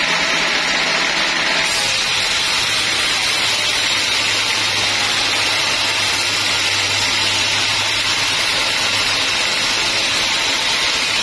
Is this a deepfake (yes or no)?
no